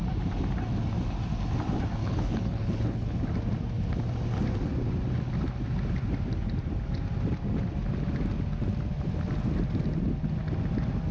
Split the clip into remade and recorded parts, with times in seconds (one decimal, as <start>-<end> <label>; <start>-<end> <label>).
0.0-2.0 recorded; 2.0-3.2 remade; 3.2-11.1 recorded